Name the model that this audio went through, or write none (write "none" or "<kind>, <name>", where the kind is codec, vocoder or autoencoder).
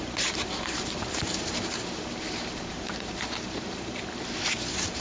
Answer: vocoder, BigVGAN v2